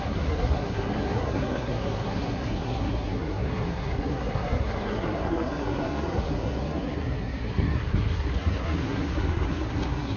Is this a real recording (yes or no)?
no